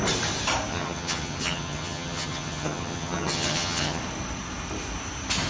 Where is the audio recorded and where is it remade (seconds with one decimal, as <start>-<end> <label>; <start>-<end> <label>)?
0.0-0.7 recorded; 0.7-4.0 remade; 4.0-5.5 recorded

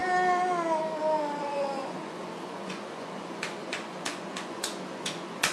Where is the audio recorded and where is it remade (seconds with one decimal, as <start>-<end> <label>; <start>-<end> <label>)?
0.0-1.4 recorded; 1.4-5.5 remade

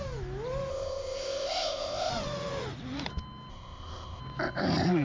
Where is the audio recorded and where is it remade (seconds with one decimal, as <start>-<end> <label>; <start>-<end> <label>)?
0.0-0.7 recorded; 0.7-2.1 remade; 2.1-3.5 recorded; 3.5-4.2 remade; 4.2-5.0 recorded

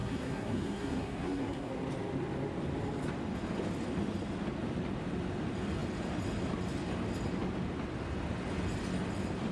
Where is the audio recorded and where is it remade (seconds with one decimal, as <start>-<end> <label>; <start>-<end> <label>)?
0.0-1.7 remade; 1.7-9.5 recorded

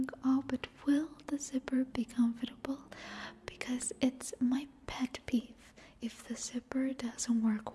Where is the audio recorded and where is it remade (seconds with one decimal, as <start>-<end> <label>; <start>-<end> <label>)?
0.0-0.7 recorded; 0.7-2.1 remade; 2.1-4.2 recorded; 4.2-6.3 remade; 6.3-6.9 recorded; 6.9-7.7 remade

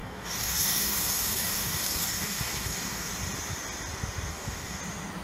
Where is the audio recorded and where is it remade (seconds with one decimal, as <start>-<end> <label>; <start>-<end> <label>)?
0.0-3.1 remade; 3.1-4.3 recorded; 4.3-4.8 remade; 4.8-5.2 recorded

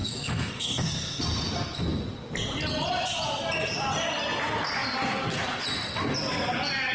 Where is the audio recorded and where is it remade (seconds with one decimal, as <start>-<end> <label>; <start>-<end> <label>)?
0.0-1.2 remade; 1.2-6.9 recorded

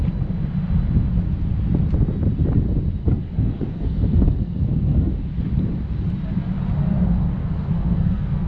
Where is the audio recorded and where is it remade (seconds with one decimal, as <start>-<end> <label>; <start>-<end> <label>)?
0.0-3.0 recorded; 3.0-5.1 remade; 5.1-7.4 recorded; 7.4-8.5 remade